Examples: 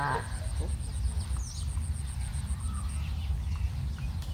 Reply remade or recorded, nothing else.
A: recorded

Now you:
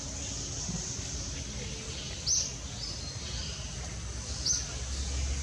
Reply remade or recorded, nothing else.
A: recorded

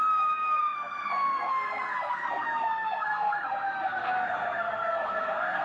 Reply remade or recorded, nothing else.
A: remade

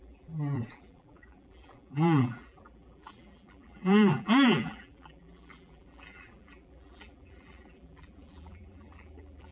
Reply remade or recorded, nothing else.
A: remade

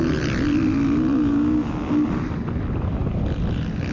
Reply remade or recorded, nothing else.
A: recorded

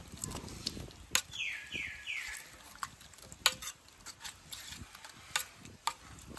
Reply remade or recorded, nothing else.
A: recorded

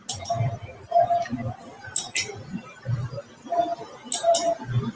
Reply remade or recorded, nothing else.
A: recorded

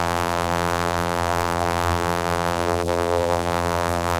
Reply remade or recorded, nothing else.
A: remade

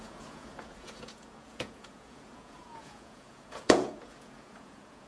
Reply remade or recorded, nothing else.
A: remade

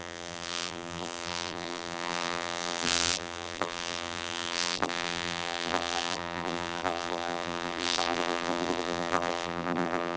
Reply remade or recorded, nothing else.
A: remade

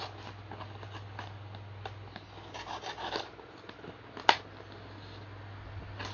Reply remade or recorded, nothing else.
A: recorded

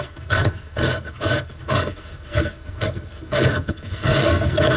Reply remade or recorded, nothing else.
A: remade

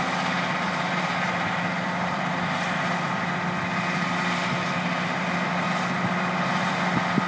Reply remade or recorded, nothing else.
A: recorded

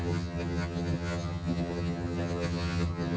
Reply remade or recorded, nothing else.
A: remade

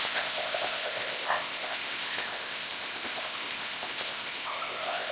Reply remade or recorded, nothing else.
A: remade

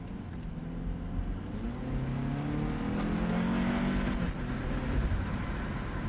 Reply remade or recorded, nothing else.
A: recorded